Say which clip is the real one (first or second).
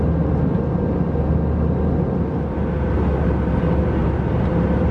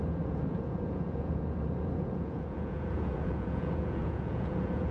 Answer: first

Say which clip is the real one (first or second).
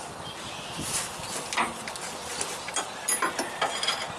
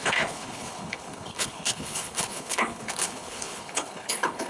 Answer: first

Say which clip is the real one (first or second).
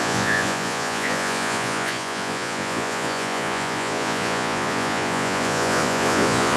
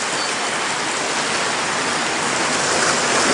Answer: second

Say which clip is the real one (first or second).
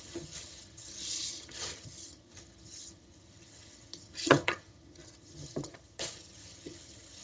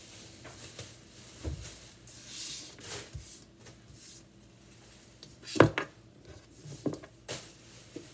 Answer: second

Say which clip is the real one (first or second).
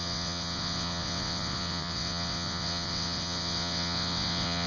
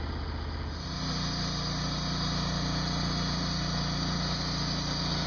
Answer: second